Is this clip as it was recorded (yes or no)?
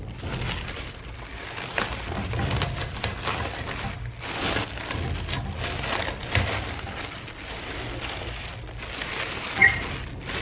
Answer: yes